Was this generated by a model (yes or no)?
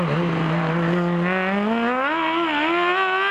no